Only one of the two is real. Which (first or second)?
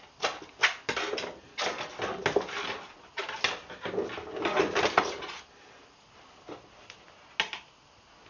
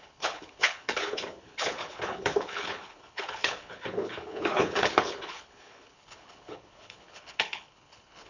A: first